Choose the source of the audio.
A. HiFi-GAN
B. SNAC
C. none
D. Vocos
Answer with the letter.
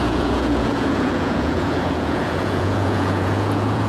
D